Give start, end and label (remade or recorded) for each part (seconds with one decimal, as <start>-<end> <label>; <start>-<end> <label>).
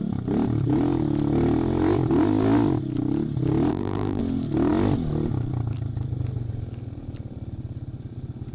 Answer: 0.0-3.7 recorded; 3.7-4.2 remade; 4.2-8.5 recorded